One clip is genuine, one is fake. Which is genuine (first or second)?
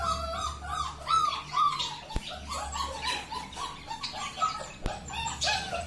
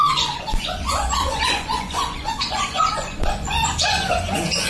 first